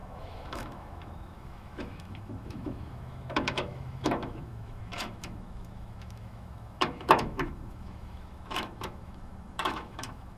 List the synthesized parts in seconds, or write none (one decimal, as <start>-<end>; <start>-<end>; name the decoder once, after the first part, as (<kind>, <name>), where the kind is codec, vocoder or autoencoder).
0.0-10.4 (autoencoder, DAC-VAE)